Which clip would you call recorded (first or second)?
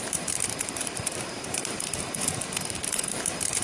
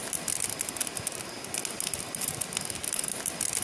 second